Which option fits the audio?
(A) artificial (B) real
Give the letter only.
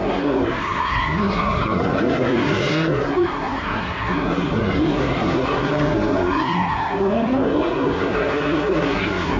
A